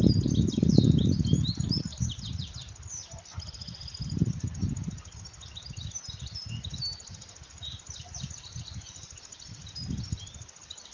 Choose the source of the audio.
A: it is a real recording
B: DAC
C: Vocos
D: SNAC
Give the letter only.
A